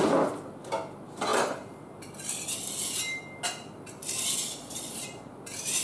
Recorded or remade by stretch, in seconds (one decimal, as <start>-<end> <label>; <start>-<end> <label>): 0.0-4.4 recorded; 4.4-5.3 remade; 5.3-5.8 recorded